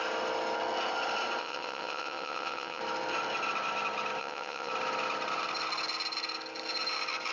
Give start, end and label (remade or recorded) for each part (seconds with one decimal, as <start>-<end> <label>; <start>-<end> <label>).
0.0-1.4 recorded; 1.4-2.8 remade; 2.8-4.2 recorded; 4.2-4.7 remade; 4.7-7.3 recorded